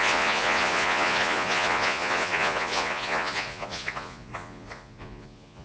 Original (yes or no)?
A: no